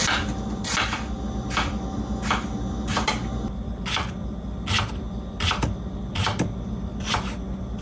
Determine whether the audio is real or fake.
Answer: real